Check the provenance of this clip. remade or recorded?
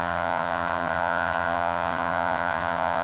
remade